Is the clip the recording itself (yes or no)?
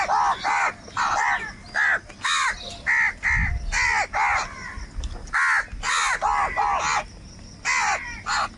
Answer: yes